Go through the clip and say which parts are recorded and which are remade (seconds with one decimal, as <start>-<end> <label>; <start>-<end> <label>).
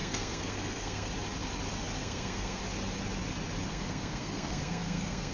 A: 0.0-1.1 remade; 1.1-2.0 recorded; 2.0-2.6 remade; 2.6-3.7 recorded; 3.7-5.3 remade